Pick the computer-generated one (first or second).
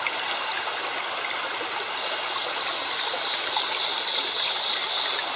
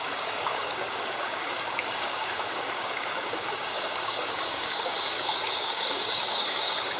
second